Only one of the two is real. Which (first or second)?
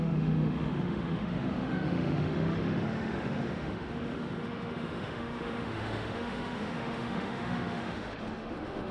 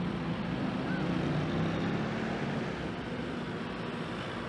second